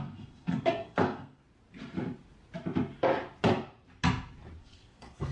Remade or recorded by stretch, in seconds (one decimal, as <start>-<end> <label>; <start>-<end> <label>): 0.0-1.4 remade; 1.4-4.6 recorded; 4.6-5.3 remade